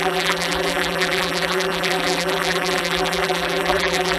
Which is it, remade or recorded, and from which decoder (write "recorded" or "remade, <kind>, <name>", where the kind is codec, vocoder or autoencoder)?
remade, vocoder, BigVGAN v2